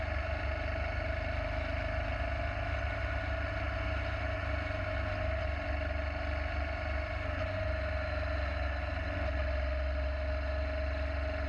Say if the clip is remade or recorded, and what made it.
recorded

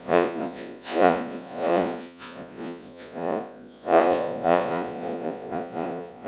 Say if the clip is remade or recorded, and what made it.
remade, vocoder, Vocos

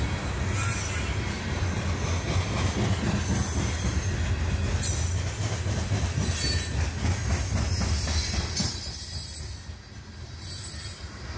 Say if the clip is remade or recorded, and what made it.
recorded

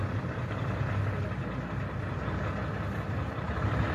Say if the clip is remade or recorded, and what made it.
recorded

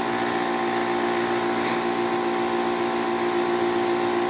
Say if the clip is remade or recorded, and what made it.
recorded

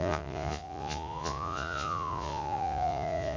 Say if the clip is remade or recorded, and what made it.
remade, vocoder, Vocos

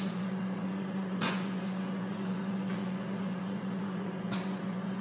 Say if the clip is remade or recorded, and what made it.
remade, vocoder, Vocos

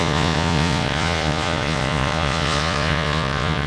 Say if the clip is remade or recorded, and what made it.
remade, vocoder, Vocos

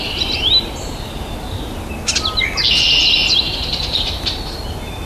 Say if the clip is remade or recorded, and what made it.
recorded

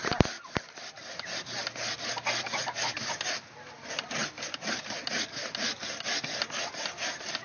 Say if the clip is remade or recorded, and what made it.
recorded